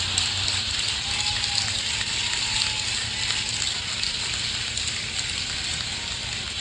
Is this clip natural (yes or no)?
yes